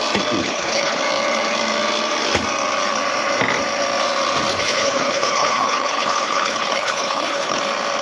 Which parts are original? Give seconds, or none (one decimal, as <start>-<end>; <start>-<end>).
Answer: 0.0-0.4; 1.0-4.5; 7.6-8.0